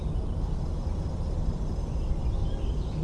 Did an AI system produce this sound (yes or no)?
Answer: no